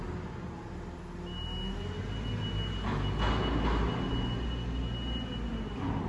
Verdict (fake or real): real